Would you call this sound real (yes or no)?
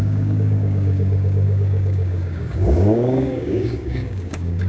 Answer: no